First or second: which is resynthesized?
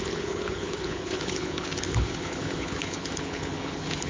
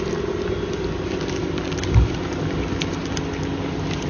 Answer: first